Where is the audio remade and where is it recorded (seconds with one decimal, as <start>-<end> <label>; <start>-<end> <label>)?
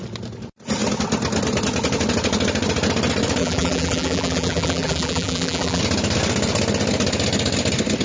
0.0-3.4 recorded; 3.4-5.8 remade; 5.8-8.0 recorded